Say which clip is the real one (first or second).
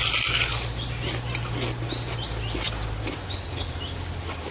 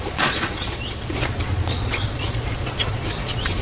first